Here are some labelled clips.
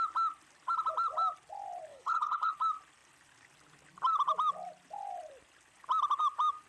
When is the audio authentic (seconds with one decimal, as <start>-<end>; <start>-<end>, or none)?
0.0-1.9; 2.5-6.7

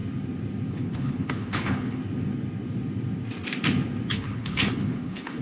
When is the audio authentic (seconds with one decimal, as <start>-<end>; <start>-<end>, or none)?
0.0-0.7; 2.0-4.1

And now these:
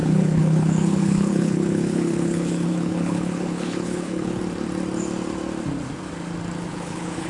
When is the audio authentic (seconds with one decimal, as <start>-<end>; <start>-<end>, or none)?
4.4-6.7

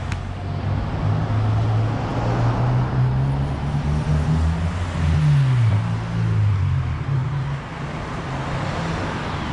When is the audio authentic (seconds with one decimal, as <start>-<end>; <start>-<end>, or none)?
0.0-9.5

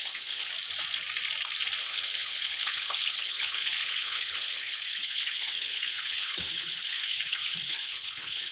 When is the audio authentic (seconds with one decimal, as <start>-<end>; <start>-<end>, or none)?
0.5-1.8

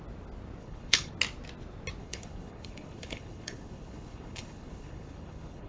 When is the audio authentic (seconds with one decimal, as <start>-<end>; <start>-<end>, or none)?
0.0-0.6; 1.1-2.0

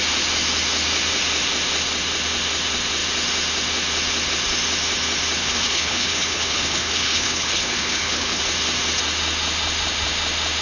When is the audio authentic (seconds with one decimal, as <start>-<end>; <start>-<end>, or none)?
0.0-5.4; 8.4-10.6

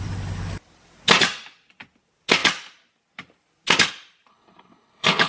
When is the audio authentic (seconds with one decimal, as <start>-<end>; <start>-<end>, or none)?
0.0-4.3